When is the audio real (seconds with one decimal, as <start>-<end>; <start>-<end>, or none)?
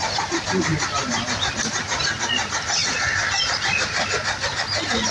0.0-5.1